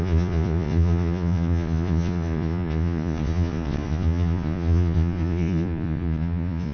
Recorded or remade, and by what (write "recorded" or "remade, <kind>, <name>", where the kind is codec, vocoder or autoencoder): remade, vocoder, Vocos